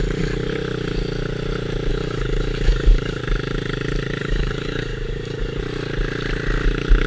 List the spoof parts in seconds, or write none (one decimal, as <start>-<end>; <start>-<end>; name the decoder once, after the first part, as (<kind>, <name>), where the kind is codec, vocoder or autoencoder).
1.9-3.2 (codec, DAC); 4.2-5.6